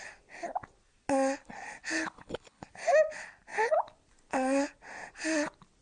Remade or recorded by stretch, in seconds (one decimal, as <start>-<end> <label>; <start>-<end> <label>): 0.0-1.4 recorded; 1.4-2.7 remade; 2.7-5.8 recorded